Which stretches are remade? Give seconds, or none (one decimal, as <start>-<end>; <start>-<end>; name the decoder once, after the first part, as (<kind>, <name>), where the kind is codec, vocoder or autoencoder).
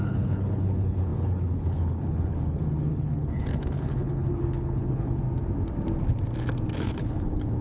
0.0-5.2 (codec, HILCodec); 6.8-7.6